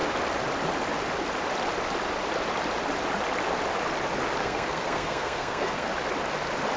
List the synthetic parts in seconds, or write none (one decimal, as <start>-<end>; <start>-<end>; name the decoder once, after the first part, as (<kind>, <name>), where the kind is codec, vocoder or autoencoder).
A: 4.4-5.9 (codec, SNAC)